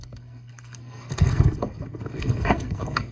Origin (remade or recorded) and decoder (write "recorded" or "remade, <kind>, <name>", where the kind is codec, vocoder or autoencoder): remade, codec, SNAC